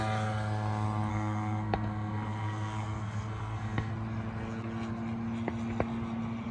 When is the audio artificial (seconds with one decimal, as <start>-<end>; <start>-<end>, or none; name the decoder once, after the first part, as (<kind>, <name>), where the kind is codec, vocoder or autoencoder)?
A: 1.1-3.9 (codec, SNAC)